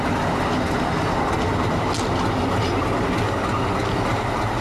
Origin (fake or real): real